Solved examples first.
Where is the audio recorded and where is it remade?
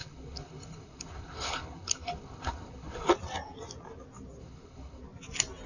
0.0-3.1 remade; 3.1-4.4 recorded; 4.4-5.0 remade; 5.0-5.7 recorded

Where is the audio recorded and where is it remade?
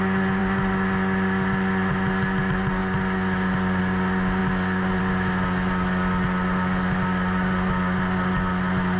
0.0-9.0 recorded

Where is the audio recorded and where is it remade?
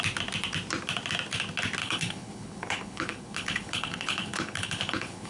0.0-1.8 recorded; 1.8-5.3 remade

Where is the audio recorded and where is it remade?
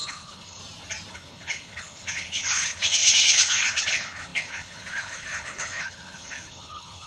0.0-0.6 remade; 0.6-1.1 recorded; 1.1-7.1 remade